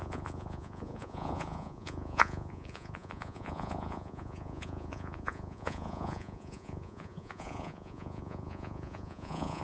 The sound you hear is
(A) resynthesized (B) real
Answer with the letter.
A